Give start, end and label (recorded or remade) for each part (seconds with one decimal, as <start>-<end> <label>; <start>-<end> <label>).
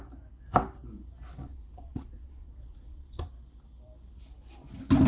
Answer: 0.0-1.4 recorded; 1.4-3.2 remade; 3.2-5.1 recorded